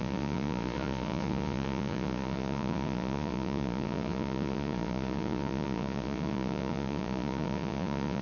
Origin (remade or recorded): remade